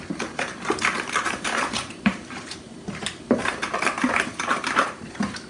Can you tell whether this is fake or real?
fake